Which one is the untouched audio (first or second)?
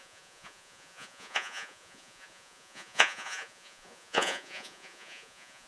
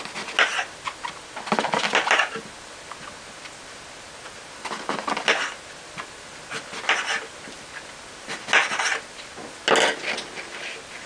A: second